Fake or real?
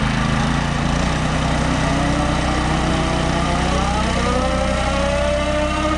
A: real